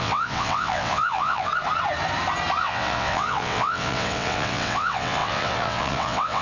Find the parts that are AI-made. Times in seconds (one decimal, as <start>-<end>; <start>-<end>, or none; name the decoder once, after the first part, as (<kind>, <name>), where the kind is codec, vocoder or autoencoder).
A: 0.0-1.5 (vocoder, WaveNeXt); 2.6-6.4